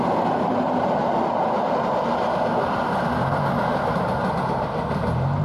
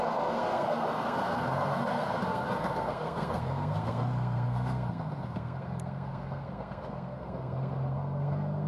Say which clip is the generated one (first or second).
second